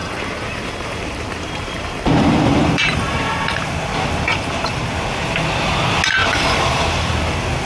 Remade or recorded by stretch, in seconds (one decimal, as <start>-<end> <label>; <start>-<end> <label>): 0.0-3.7 remade; 3.7-4.3 recorded; 4.3-4.9 remade; 4.9-6.2 recorded; 6.2-7.1 remade; 7.1-7.7 recorded